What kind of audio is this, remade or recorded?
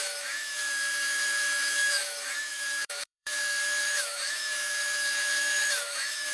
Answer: remade